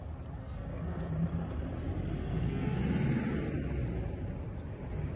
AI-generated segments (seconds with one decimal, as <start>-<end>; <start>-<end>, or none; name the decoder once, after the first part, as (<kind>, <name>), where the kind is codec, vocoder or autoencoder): 0.4-1.1 (codec, SNAC); 2.2-2.8